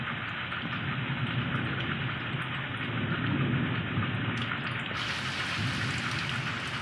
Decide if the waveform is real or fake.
real